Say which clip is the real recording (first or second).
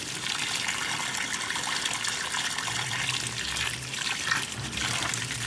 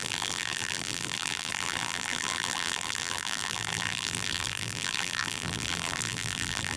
first